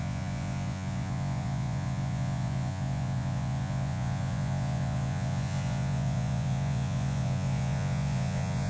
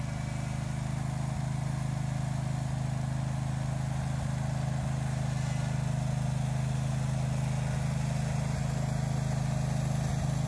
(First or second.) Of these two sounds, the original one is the second